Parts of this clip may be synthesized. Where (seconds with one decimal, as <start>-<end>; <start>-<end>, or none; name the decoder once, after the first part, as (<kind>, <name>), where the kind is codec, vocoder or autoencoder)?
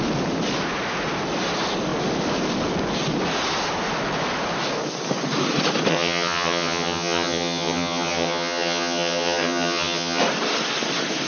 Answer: 5.9-10.2 (vocoder, HiFi-GAN)